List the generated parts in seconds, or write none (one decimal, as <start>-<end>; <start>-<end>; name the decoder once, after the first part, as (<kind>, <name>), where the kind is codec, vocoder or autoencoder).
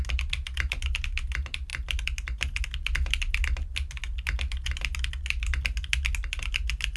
none